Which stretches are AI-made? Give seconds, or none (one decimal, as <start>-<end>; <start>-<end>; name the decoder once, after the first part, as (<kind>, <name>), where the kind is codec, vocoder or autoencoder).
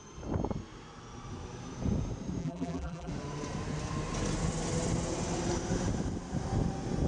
2.4-3.1 (vocoder, BigVGAN v2)